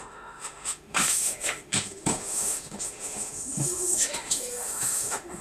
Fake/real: fake